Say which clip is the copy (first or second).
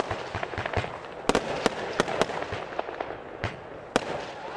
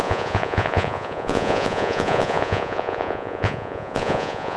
second